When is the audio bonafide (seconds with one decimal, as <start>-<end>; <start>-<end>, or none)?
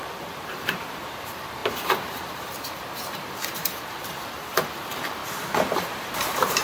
5.2-6.0